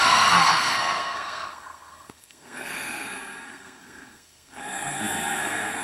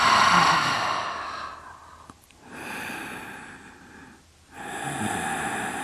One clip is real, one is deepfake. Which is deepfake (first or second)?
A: first